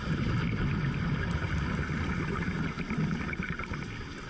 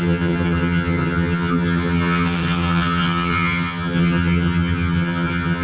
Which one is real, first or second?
first